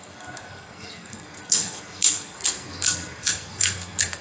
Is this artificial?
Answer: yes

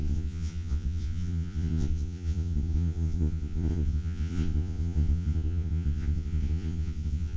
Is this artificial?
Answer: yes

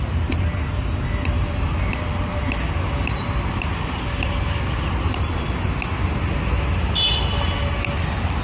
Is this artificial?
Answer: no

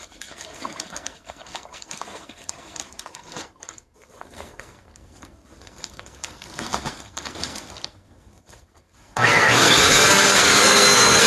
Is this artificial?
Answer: yes